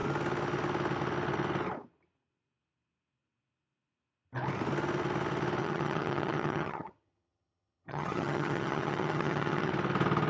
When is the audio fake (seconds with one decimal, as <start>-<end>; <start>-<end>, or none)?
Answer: 5.6-9.7